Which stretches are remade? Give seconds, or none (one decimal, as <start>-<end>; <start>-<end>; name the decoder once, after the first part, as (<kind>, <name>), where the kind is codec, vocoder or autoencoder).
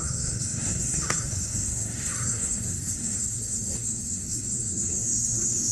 0.0-5.7 (codec, SNAC)